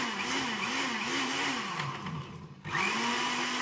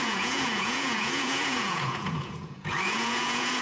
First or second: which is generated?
second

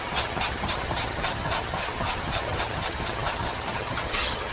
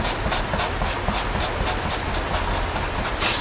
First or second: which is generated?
first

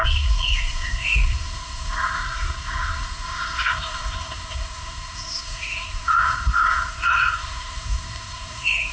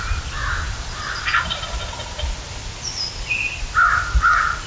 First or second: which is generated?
first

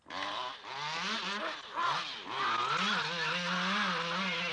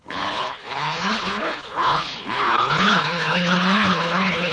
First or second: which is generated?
second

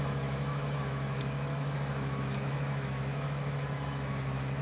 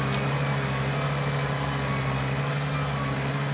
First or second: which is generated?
first